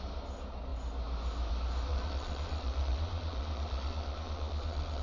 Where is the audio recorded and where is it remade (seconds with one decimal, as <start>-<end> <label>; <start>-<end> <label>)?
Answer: 0.0-1.9 recorded; 1.9-5.0 remade